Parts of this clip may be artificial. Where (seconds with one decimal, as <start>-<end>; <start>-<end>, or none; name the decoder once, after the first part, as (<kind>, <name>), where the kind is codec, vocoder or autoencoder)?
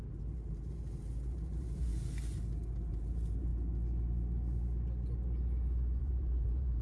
0.0-1.9 (vocoder, BigVGAN v2); 2.9-3.5; 6.0-6.8